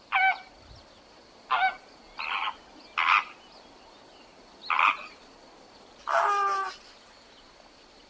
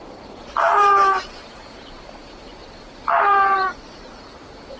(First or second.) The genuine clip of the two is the first